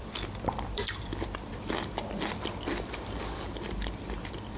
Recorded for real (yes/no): no